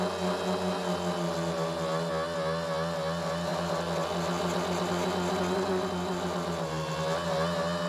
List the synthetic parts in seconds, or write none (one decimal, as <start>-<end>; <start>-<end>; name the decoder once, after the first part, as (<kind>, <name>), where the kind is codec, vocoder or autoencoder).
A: none

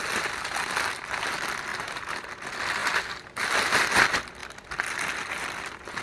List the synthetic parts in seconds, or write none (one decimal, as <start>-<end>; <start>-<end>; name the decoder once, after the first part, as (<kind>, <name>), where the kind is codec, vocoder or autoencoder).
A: 1.7-2.3 (vocoder, BigVGAN v2)

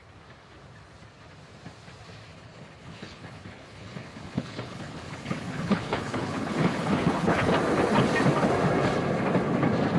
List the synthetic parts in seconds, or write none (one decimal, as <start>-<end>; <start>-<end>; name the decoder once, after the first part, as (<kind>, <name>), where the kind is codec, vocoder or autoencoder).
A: 2.3-7.5 (codec, HILCodec)

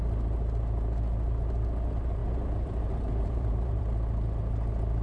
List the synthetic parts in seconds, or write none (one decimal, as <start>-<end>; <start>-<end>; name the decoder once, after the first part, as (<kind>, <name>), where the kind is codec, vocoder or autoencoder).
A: 2.2-3.8 (vocoder, BigVGAN v2)

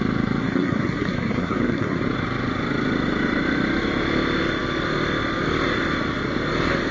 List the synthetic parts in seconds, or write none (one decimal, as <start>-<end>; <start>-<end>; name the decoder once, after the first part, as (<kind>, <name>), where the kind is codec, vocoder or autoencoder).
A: 0.4-2.0 (codec, SNAC)

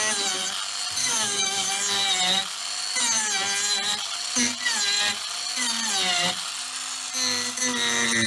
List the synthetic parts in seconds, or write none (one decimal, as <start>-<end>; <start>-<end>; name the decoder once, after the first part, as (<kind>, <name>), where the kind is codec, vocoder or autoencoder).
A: 1.0-1.7 (codec, DAC)